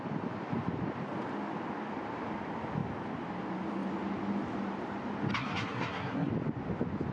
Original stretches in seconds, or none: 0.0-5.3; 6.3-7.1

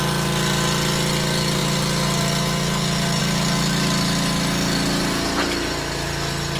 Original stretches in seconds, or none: 0.0-6.6

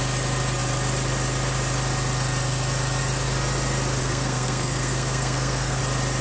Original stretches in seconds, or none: 0.0-4.0; 5.8-6.2